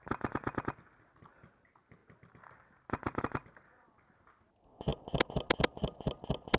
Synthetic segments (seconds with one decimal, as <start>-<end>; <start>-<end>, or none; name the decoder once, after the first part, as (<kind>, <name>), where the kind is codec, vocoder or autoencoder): none